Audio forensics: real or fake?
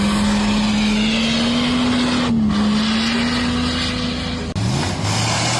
real